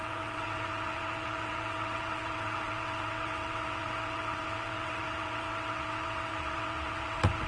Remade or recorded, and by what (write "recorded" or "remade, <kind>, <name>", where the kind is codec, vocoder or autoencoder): remade, vocoder, WaveNeXt